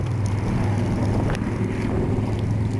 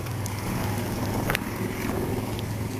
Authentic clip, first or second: first